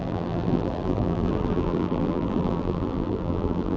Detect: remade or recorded remade